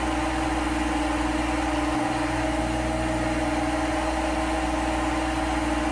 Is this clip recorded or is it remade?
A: recorded